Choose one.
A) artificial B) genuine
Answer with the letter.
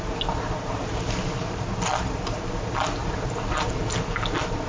B